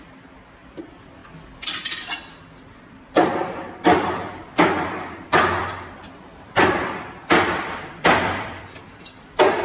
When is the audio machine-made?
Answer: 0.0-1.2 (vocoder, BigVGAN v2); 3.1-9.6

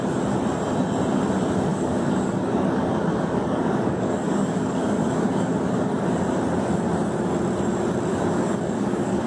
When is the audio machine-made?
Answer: 1.7-6.2 (codec, DAC); 8.1-9.3

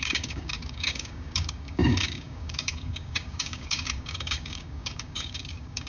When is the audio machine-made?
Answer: 0.0-5.9 (codec, DAC)